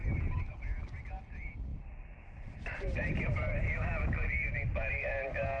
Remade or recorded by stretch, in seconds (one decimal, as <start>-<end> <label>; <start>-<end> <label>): 0.0-0.5 remade; 0.5-1.7 recorded; 1.7-4.9 remade; 4.9-5.6 recorded